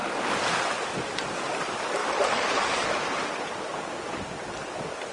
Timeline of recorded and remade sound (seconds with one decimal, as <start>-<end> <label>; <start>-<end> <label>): 0.0-5.1 recorded